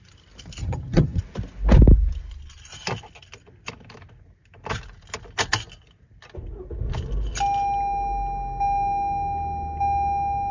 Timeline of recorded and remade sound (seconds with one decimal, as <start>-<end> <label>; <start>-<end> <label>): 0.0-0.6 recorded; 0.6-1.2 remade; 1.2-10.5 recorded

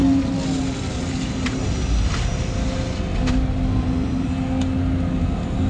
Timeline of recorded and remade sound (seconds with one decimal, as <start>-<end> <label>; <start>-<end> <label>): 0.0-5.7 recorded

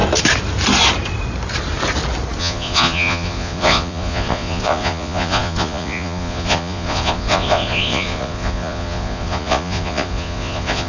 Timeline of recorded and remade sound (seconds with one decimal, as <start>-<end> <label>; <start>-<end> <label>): 0.0-2.4 recorded; 2.4-10.9 remade

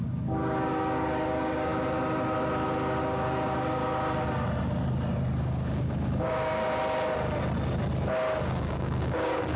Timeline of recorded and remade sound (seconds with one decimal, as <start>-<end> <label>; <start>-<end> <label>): 0.0-1.7 remade; 1.7-3.0 recorded; 3.0-3.8 remade; 3.8-5.4 recorded; 5.4-6.6 remade; 6.6-8.4 recorded; 8.4-9.6 remade